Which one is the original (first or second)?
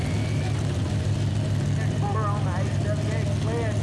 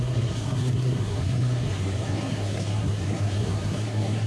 first